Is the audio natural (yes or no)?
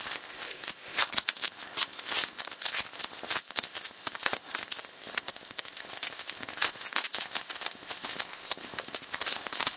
no